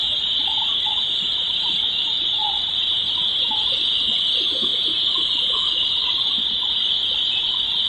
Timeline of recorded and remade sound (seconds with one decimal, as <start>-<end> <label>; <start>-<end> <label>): 0.0-3.5 remade; 3.5-7.9 recorded